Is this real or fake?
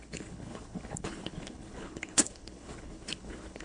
fake